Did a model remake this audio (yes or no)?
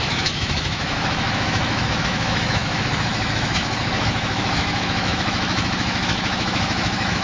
yes